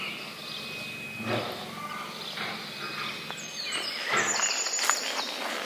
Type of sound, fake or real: real